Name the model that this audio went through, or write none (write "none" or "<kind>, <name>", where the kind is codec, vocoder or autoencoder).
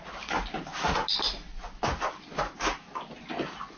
none